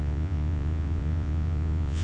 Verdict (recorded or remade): remade